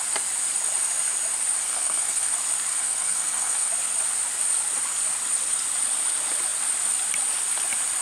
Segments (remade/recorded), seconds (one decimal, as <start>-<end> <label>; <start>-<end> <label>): 0.0-1.6 recorded; 1.6-2.3 remade; 2.3-2.7 recorded; 2.7-3.7 remade; 3.7-8.0 recorded